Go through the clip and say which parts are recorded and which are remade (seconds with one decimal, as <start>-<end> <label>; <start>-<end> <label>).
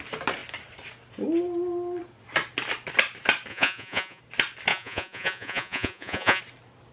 0.0-3.5 recorded; 3.5-4.2 remade; 4.2-4.7 recorded; 4.7-6.4 remade; 6.4-6.9 recorded